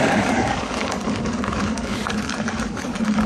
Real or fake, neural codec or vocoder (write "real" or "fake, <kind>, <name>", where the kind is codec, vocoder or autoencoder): fake, codec, DAC